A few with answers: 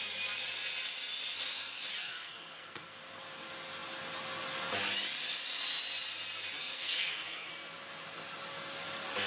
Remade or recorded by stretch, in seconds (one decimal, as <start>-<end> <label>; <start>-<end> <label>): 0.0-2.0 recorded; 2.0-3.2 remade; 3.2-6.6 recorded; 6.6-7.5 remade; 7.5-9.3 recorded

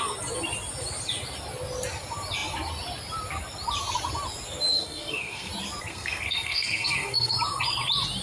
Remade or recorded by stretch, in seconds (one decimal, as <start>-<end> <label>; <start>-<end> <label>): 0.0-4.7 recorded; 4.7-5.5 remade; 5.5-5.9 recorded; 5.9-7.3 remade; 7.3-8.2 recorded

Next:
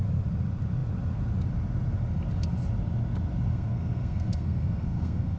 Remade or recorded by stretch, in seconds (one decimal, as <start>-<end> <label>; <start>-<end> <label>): 0.0-3.5 recorded; 3.5-5.4 remade